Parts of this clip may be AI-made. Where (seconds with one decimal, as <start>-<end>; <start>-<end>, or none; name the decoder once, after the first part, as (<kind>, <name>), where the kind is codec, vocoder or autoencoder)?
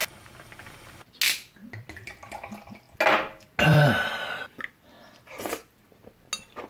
3.7-4.5 (vocoder, BigVGAN v2)